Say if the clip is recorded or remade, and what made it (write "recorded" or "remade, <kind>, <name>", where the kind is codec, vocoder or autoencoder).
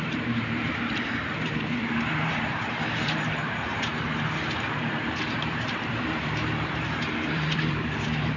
remade, vocoder, BigVGAN v2